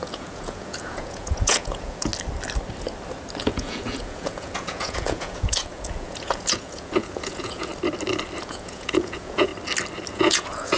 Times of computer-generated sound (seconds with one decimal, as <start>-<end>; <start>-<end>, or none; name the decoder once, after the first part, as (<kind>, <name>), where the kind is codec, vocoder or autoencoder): 0.0-2.1 (vocoder, Vocos); 3.4-7.7; 8.4-9.5; 10.1-10.8